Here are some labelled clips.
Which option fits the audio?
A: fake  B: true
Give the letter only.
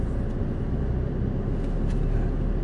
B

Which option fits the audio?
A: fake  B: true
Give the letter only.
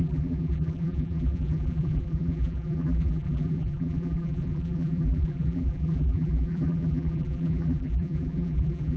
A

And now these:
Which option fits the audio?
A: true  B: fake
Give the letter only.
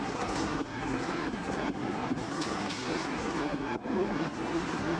B